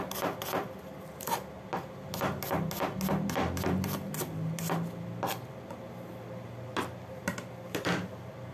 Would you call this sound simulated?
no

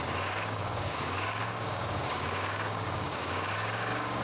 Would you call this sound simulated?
yes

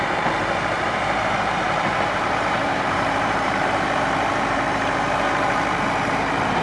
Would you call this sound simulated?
yes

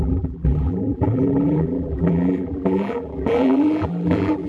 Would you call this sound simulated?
yes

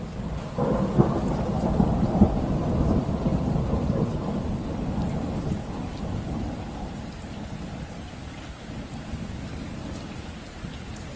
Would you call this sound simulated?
yes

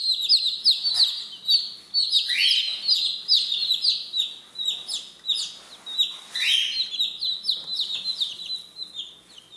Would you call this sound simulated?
no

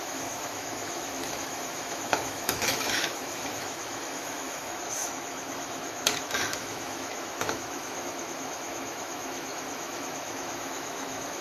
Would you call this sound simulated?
yes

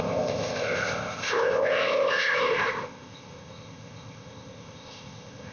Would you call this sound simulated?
yes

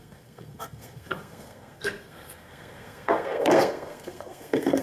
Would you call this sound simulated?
yes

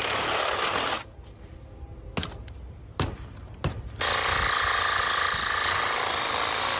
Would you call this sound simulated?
no